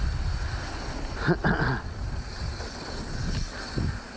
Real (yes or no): yes